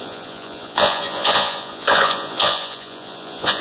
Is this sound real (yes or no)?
no